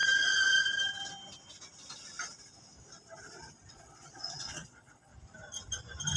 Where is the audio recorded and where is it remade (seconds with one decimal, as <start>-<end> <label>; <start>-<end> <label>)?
0.0-3.7 recorded; 3.7-5.1 remade; 5.1-6.2 recorded